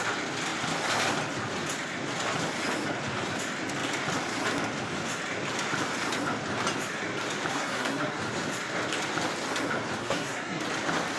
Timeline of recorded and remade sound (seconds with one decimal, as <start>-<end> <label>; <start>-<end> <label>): 0.0-7.5 recorded; 7.5-8.2 remade; 8.2-10.0 recorded; 10.0-10.6 remade; 10.6-11.2 recorded